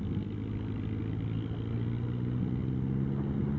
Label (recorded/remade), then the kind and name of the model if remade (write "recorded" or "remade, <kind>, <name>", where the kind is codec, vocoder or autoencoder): recorded